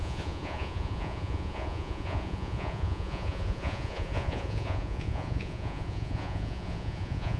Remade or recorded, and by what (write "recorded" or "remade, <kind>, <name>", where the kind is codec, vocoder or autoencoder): remade, vocoder, Vocos